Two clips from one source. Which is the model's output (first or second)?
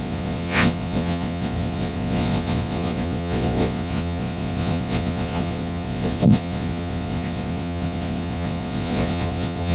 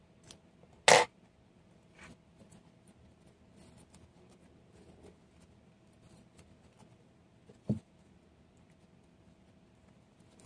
first